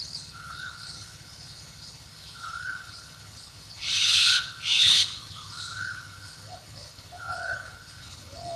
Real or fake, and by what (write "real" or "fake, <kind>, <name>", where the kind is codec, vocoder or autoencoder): fake, codec, HILCodec